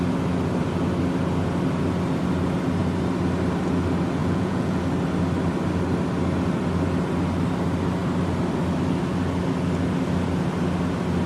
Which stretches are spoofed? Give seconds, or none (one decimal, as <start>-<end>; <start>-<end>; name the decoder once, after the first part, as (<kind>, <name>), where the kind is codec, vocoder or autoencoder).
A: 4.2-4.8 (vocoder, Vocos)